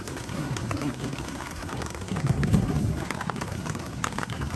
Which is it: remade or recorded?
remade